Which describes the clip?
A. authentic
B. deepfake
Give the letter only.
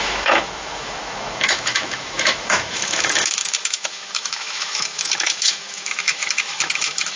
B